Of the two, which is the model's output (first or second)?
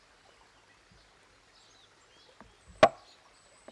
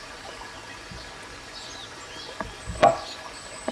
second